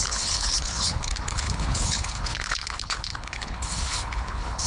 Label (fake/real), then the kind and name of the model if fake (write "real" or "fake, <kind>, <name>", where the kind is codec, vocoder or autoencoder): fake, codec, HILCodec